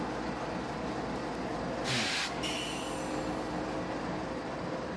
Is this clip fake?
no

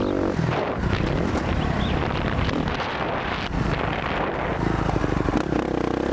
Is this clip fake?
no